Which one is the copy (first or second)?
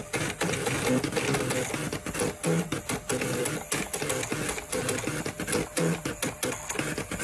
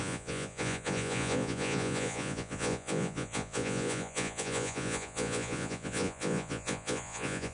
second